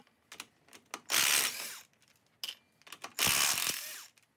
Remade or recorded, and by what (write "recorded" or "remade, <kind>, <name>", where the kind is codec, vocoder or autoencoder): recorded